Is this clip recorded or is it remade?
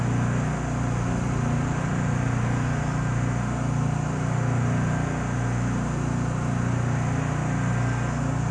recorded